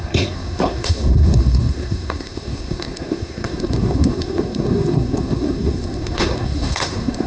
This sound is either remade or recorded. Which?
remade